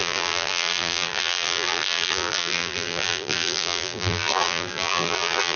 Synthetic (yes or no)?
yes